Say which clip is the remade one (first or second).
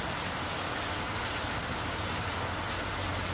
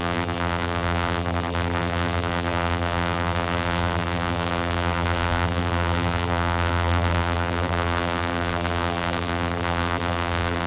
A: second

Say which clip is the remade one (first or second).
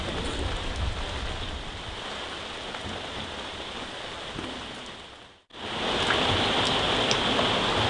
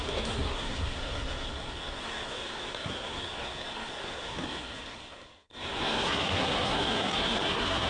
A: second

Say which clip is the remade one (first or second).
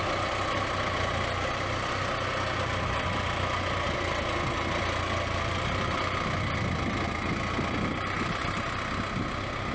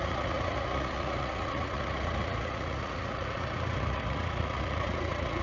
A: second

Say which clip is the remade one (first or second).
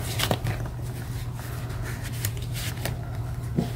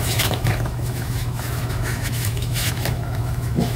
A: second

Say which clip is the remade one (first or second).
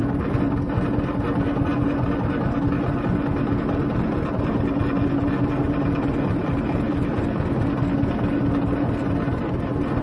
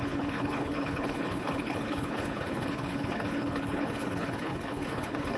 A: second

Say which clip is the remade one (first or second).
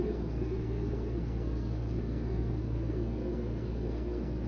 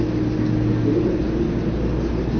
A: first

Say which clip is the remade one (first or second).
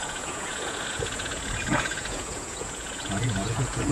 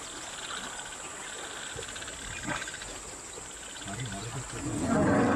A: first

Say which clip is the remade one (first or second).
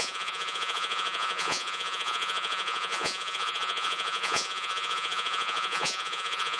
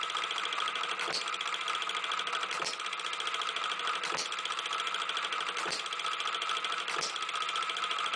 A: first